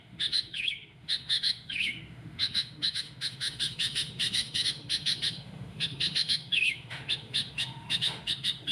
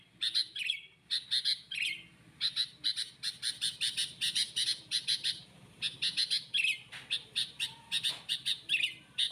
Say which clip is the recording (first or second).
second